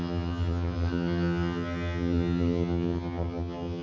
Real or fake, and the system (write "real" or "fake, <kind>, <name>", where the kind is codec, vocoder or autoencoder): fake, vocoder, HiFi-GAN